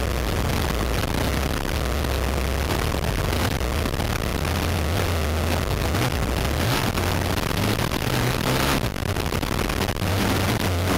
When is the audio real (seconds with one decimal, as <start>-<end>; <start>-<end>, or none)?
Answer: 0.0-11.0